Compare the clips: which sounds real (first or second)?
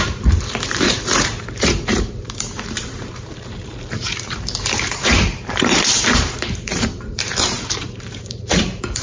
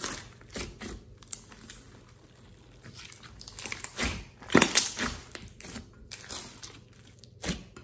second